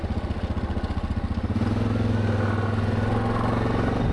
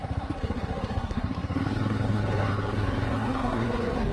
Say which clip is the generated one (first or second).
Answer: second